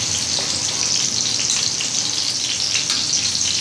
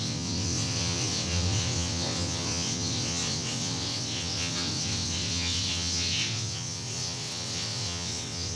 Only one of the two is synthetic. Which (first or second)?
second